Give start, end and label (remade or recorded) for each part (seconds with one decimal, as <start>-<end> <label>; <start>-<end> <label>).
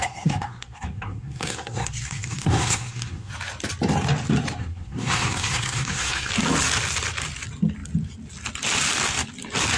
0.0-3.3 remade; 3.3-4.6 recorded; 4.6-6.3 remade; 6.3-9.8 recorded